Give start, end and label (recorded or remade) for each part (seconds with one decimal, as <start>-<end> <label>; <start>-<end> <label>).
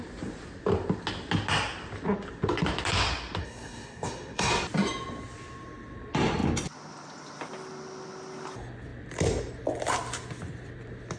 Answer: 0.0-3.4 recorded; 3.4-4.5 remade; 4.5-11.2 recorded